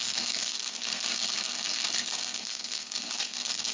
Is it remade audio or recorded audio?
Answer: remade